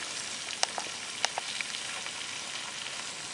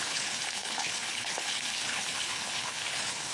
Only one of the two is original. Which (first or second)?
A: first